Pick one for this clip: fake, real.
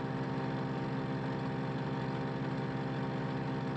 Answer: real